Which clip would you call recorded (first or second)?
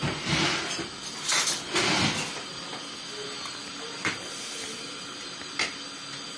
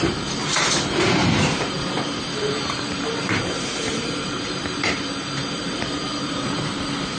first